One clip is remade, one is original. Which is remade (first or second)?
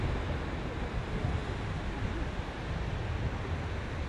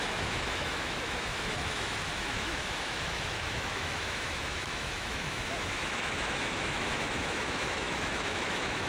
second